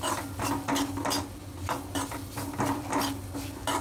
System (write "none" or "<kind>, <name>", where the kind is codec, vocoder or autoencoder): none